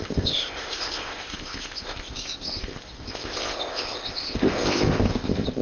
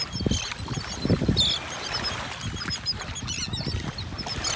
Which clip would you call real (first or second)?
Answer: second